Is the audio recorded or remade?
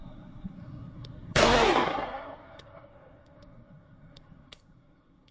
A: remade